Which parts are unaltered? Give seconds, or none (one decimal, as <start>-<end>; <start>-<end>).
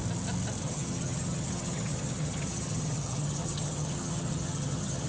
0.0-0.6